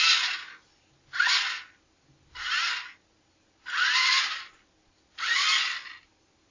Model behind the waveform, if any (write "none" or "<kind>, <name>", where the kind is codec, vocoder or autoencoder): none